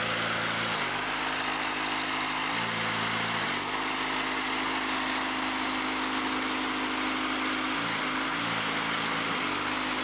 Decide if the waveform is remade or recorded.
recorded